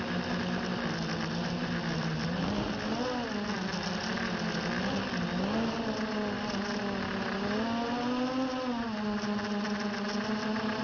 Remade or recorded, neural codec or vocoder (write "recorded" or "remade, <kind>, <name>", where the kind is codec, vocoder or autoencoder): recorded